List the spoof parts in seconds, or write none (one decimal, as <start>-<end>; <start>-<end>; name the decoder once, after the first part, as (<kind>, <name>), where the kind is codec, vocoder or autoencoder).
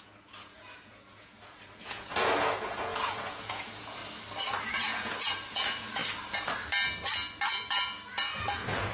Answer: 0.0-4.0 (vocoder, Vocos); 4.7-6.0; 7.7-8.9